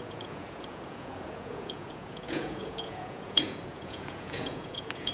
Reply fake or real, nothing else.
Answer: fake